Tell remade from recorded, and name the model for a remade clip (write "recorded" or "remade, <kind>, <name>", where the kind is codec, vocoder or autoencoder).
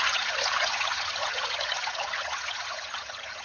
remade, vocoder, HiFi-GAN